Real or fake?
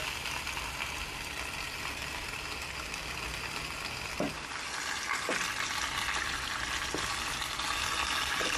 real